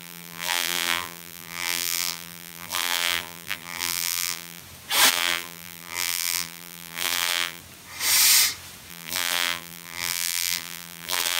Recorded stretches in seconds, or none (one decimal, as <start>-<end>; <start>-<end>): 4.6-5.1; 7.6-8.9